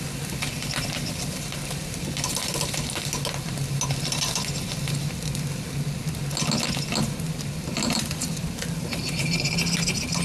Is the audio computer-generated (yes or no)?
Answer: no